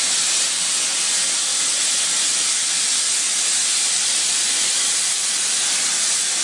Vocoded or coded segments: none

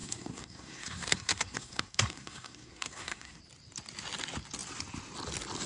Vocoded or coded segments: 0.0-3.4

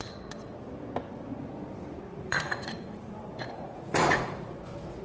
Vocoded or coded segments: 2.1-4.6

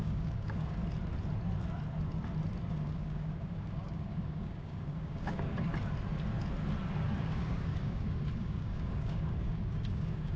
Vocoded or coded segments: 0.0-0.8; 2.7-5.7; 7.2-10.4

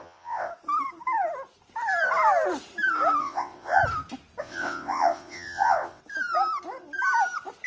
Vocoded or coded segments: 0.0-0.5; 3.2-3.8; 4.4-6.0

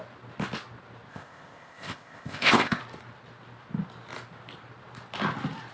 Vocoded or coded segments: 1.1-2.8